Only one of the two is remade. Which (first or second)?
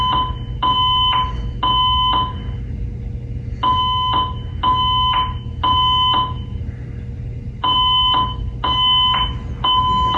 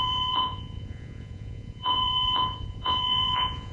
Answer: second